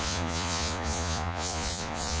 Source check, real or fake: fake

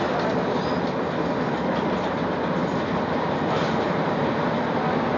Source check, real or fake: real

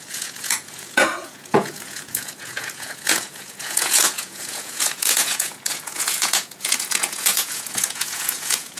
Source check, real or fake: fake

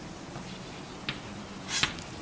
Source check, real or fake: real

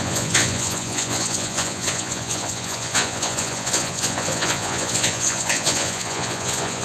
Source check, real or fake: fake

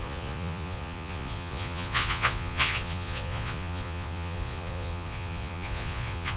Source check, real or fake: fake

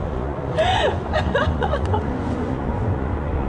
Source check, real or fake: fake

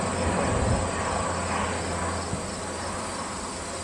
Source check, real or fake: real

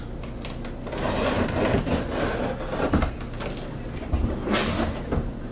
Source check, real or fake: real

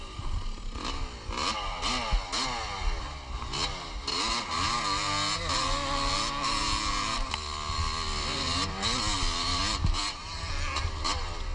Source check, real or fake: real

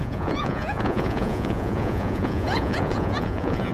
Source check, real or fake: fake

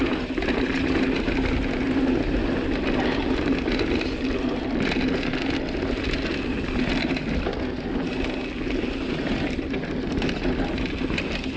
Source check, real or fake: real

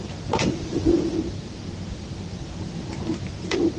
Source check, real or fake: real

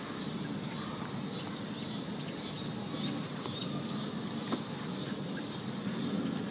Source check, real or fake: real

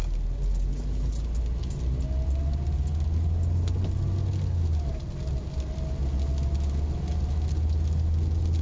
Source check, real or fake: real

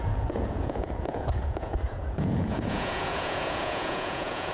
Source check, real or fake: fake